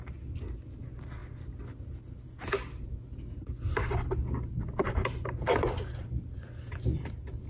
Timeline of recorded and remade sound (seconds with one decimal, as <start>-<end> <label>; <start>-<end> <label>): 0.0-7.5 recorded